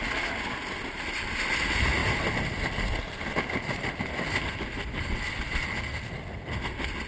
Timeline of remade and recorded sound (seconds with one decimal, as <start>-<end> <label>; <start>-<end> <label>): 0.0-7.1 recorded